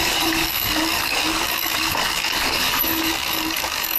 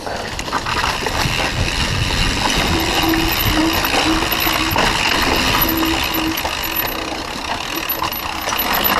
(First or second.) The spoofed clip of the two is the first